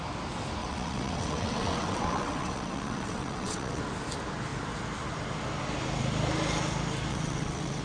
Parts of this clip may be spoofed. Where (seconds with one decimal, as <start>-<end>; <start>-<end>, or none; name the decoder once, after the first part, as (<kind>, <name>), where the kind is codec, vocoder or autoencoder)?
0.6-3.8 (vocoder, WaveNeXt); 7.1-7.8